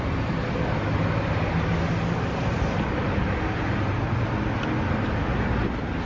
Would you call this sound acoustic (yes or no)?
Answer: yes